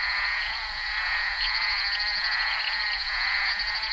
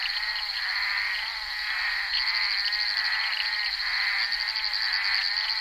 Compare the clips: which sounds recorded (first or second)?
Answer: second